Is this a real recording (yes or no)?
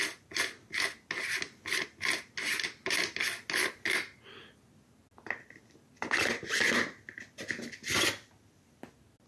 yes